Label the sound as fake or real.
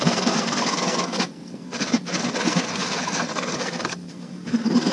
fake